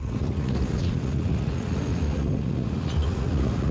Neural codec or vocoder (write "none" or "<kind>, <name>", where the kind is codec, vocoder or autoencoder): vocoder, Vocos